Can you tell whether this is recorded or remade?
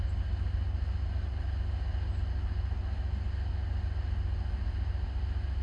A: recorded